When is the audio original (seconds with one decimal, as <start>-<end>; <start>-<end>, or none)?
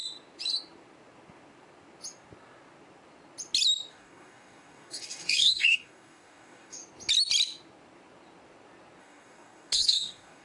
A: 0.0-3.9; 6.8-9.0